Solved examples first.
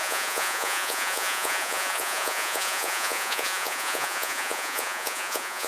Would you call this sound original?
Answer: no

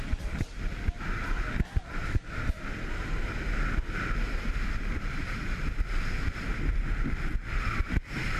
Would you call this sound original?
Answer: yes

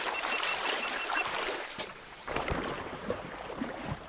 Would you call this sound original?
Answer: no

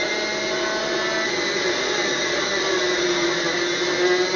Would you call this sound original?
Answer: yes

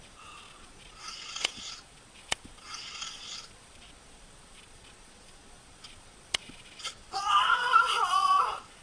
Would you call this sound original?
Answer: no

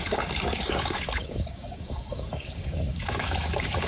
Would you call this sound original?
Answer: no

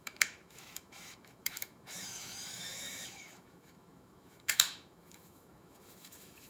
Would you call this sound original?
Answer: no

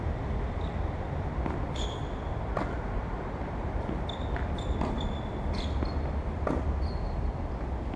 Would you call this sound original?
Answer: no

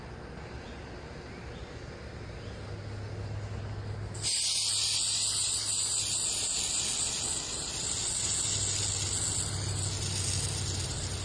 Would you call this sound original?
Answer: yes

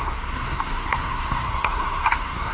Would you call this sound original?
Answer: no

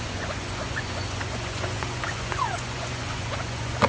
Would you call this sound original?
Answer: no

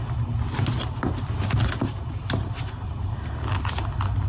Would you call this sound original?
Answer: yes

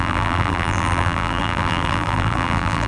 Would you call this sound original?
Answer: no